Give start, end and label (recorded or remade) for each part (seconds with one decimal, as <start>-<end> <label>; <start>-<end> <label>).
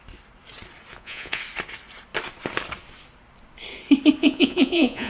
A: 0.0-0.9 recorded; 0.9-1.4 remade; 1.4-4.2 recorded; 4.2-5.1 remade